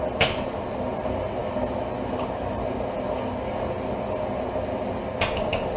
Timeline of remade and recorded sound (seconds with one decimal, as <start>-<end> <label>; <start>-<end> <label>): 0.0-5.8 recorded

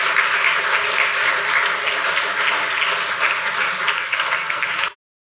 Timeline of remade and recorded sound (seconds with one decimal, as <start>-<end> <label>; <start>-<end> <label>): 0.0-3.9 recorded; 3.9-4.7 remade; 4.7-5.3 recorded

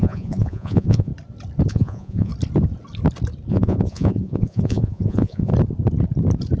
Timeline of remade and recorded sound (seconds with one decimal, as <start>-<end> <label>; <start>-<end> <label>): 0.0-1.1 remade; 1.1-1.7 recorded; 1.7-2.3 remade; 2.3-3.5 recorded; 3.5-5.5 remade; 5.5-6.6 recorded

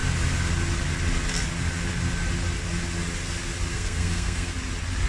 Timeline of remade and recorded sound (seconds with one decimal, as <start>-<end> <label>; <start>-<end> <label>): 0.0-3.7 recorded; 3.7-4.5 remade; 4.5-5.1 recorded

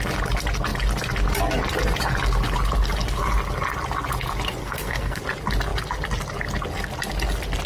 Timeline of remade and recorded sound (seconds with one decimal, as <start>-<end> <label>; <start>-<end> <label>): 0.0-4.6 recorded; 4.6-5.2 remade; 5.2-7.7 recorded